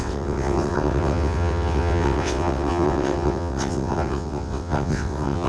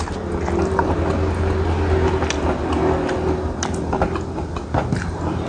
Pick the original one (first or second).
second